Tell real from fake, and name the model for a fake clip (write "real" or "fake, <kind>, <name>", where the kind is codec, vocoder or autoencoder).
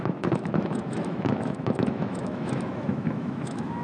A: fake, autoencoder, DAC-VAE